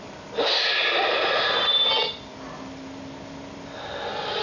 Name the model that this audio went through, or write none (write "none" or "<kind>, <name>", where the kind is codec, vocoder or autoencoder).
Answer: none